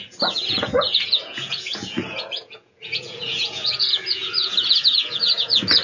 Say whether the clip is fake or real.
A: fake